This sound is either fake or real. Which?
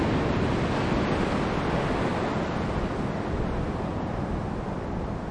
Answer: real